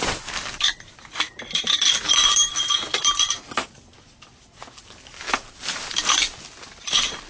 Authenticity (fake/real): real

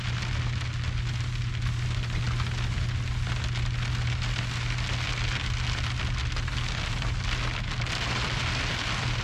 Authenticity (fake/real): real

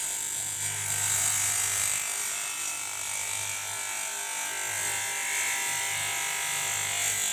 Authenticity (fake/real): real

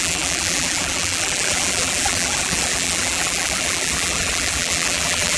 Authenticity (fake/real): fake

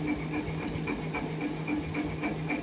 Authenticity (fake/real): real